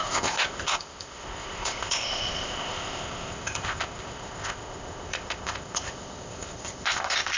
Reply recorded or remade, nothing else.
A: remade